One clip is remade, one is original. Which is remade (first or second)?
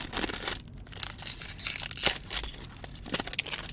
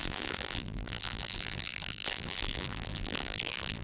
second